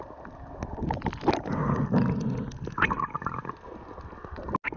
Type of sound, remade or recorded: recorded